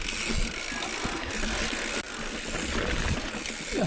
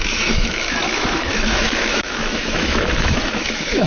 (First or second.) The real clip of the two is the first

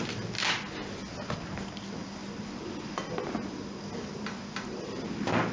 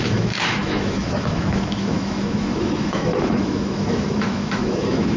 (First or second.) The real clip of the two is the first